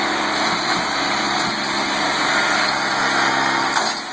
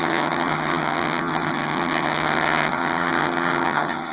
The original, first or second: first